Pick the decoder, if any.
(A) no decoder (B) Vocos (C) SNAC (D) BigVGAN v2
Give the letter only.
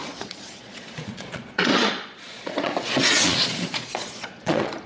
B